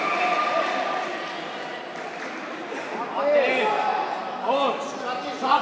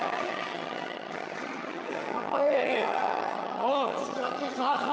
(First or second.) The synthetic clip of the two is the second